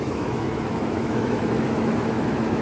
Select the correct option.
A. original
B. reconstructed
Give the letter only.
B